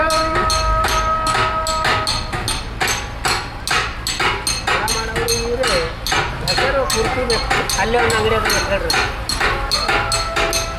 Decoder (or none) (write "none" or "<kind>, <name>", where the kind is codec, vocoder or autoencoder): none